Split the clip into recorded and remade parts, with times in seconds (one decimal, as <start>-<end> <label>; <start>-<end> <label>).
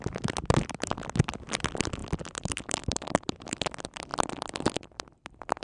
0.0-5.6 remade